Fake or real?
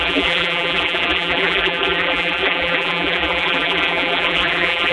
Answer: fake